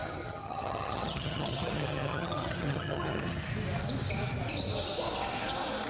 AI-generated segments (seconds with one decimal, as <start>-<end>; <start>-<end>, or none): 0.0-3.5